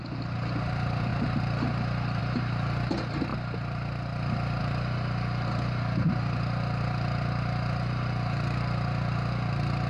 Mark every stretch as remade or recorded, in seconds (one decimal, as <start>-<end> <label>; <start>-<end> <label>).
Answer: 0.0-9.9 recorded